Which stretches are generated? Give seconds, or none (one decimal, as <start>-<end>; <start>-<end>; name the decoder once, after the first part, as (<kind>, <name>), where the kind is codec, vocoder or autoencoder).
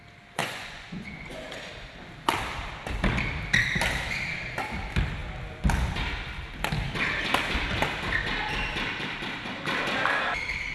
0.4-1.7 (vocoder, Vocos)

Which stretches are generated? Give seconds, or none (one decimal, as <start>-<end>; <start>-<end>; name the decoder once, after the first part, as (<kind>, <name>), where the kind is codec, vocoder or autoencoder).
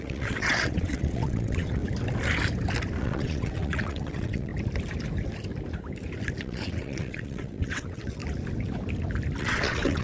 0.0-1.8 (vocoder, WaveNeXt); 3.0-4.5; 6.4-8.2; 9.4-10.0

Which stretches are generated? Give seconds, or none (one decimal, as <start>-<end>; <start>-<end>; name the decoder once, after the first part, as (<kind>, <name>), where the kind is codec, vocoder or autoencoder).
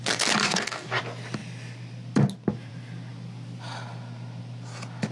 0.4-1.0 (codec, DAC)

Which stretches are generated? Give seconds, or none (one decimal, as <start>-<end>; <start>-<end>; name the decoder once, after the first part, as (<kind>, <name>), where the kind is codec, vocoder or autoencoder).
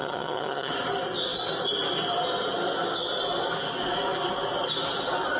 0.0-0.7 (vocoder, HiFi-GAN)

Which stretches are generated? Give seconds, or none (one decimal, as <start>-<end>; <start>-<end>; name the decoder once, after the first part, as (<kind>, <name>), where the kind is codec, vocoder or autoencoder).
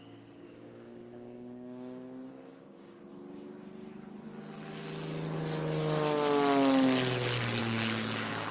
0.0-3.0 (codec, DAC); 7.6-8.5